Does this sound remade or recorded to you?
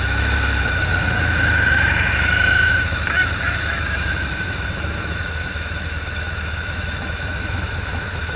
remade